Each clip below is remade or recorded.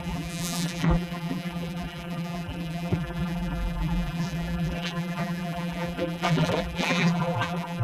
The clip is remade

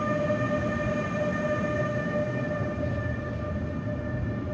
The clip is recorded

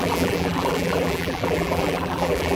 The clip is remade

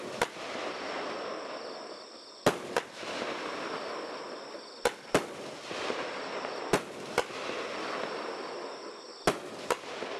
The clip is recorded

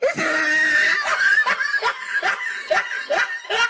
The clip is recorded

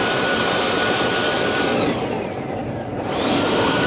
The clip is remade